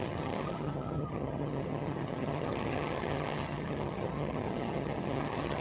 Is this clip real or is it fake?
fake